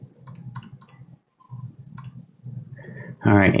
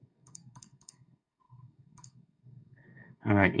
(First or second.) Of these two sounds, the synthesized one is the second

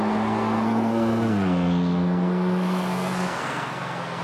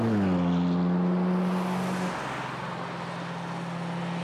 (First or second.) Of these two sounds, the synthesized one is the first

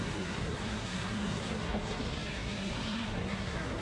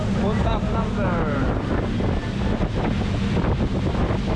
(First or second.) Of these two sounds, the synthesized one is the first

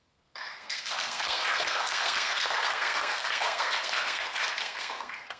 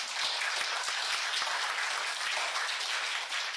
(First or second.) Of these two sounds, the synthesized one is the first